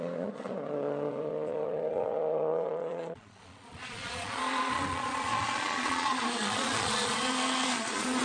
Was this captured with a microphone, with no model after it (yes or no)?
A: no